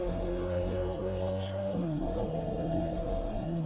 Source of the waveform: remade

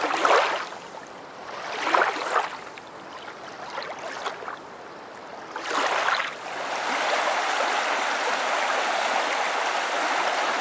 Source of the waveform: recorded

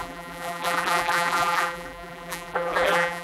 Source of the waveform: remade